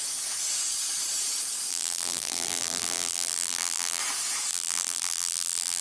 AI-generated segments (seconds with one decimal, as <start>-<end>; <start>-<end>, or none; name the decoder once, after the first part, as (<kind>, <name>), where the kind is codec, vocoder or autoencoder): 1.7-4.0 (vocoder, BigVGAN v2); 4.5-5.8